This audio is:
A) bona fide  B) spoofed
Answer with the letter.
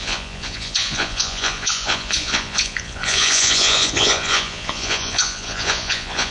B